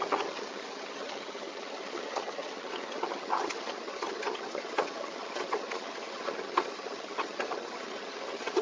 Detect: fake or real fake